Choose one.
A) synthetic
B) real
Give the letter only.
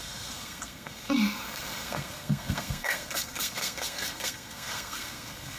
A